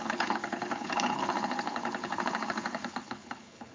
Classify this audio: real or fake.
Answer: fake